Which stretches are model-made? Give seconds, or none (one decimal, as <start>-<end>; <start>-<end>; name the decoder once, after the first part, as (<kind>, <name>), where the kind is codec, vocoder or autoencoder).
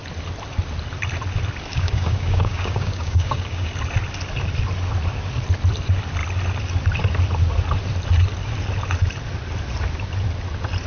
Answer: 1.7-3.7 (codec, DAC)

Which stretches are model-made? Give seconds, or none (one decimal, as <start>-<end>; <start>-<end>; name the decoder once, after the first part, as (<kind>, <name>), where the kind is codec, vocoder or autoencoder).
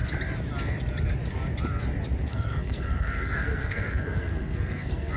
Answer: 2.3-5.2 (codec, SNAC)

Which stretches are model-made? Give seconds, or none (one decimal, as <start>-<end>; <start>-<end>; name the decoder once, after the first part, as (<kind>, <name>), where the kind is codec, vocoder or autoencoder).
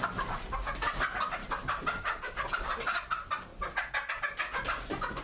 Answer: 1.4-3.0 (vocoder, BigVGAN v2); 3.5-4.1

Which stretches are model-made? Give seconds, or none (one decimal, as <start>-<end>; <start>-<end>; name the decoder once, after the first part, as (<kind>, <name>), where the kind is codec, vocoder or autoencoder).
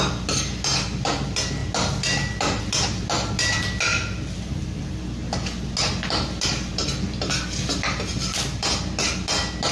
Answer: 3.9-5.0 (vocoder, BigVGAN v2)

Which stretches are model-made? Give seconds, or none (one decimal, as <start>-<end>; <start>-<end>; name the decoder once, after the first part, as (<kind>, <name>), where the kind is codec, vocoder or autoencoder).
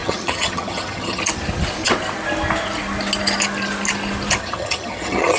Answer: 0.0-1.2 (vocoder, HiFi-GAN); 4.4-5.4